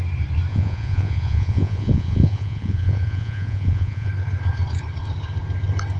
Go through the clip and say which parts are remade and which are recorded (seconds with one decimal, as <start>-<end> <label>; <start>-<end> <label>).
0.0-0.5 recorded; 0.5-4.1 remade; 4.1-6.0 recorded